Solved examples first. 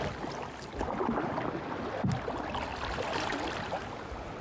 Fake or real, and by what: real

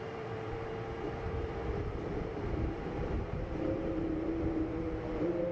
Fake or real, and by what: fake, vocoder, BigVGAN v2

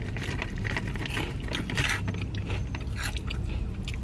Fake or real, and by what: real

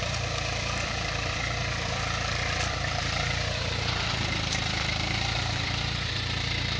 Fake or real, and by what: fake, vocoder, BigVGAN v2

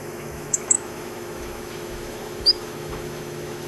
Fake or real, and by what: fake, autoencoder, DAC-VAE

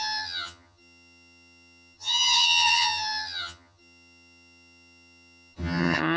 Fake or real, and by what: fake, vocoder, HiFi-GAN